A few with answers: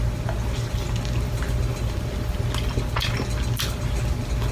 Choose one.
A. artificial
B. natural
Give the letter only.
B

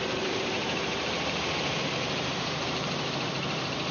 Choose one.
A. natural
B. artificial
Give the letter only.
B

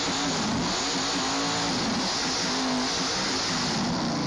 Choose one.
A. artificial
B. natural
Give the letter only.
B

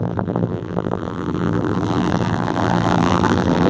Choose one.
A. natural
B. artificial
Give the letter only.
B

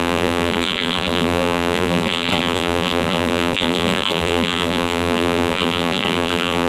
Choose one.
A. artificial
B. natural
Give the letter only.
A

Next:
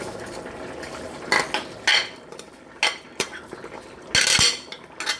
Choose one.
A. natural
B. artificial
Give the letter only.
A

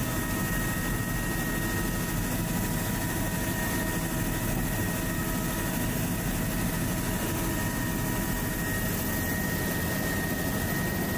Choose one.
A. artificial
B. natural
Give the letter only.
B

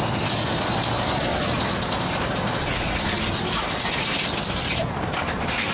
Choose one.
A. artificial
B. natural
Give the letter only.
B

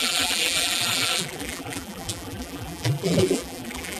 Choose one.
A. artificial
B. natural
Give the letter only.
A